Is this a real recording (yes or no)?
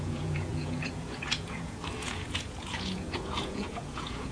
no